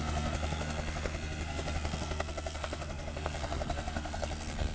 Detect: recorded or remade remade